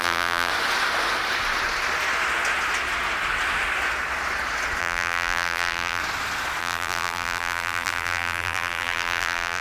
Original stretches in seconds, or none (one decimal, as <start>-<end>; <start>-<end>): 0.5-4.8; 6.0-6.6